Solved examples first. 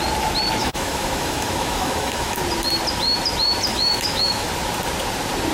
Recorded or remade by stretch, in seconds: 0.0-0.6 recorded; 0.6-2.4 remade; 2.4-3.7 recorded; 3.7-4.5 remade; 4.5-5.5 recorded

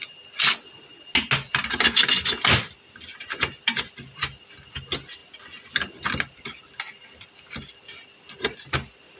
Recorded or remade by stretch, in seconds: 0.0-9.2 recorded